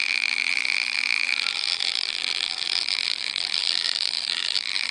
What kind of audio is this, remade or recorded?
remade